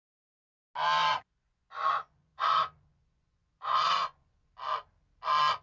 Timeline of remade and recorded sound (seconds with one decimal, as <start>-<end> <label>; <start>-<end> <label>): 0.0-1.1 recorded; 1.1-4.5 remade; 4.5-5.6 recorded